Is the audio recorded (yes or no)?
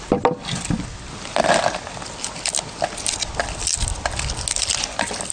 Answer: yes